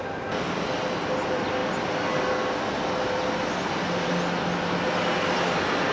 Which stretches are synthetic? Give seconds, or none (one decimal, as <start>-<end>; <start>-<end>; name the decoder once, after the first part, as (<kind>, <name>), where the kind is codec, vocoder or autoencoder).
none